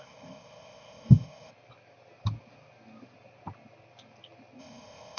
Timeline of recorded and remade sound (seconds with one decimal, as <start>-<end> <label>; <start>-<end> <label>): 0.0-1.5 remade; 1.5-4.6 recorded; 4.6-5.2 remade